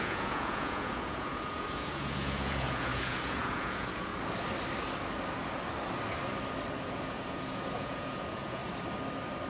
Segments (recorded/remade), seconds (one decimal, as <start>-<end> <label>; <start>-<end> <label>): 0.0-4.1 remade; 4.1-6.8 recorded; 6.8-8.6 remade; 8.6-9.5 recorded